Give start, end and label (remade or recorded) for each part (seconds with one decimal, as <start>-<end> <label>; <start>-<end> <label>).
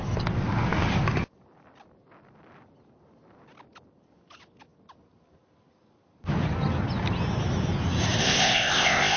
0.0-8.2 recorded; 8.2-9.2 remade